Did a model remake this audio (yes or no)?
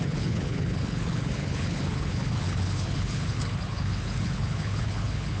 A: yes